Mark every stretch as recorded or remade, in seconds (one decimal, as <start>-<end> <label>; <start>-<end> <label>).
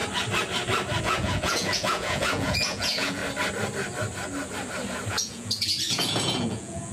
0.0-1.0 recorded; 1.0-3.2 remade; 3.2-5.1 recorded; 5.1-6.9 remade